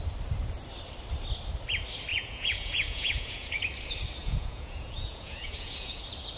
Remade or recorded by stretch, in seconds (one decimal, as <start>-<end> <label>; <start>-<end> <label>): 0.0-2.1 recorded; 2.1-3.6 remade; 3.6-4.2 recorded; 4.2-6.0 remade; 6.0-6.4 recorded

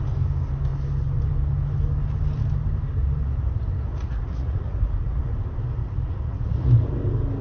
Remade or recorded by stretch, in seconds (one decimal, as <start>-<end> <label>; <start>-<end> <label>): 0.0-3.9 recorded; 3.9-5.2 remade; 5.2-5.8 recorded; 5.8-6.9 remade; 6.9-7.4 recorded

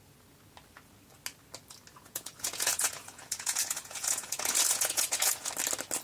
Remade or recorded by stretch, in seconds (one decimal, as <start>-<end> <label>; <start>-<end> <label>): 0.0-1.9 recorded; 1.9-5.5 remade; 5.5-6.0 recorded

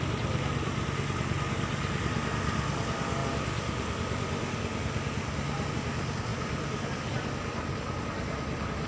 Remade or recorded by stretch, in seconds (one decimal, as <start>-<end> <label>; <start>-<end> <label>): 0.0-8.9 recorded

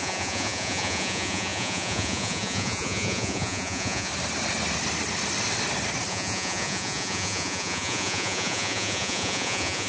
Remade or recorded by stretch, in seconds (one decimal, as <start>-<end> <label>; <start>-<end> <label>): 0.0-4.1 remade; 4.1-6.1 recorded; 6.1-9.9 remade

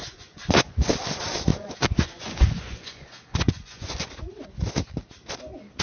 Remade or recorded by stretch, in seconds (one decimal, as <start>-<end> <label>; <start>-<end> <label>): 0.0-0.9 remade; 0.9-1.5 recorded; 1.5-4.1 remade; 4.1-5.8 recorded

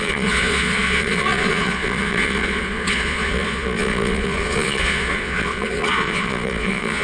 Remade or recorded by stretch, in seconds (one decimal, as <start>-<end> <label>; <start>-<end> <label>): 0.0-7.0 remade